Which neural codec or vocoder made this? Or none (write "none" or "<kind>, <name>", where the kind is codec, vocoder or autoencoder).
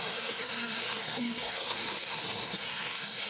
codec, SNAC